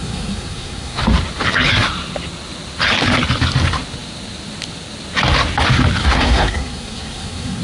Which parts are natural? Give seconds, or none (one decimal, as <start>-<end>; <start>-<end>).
1.0-6.0